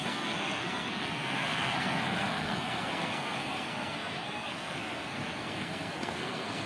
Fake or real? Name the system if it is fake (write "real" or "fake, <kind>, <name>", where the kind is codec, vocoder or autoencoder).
fake, codec, SNAC